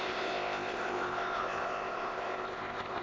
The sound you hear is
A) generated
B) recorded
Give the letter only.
A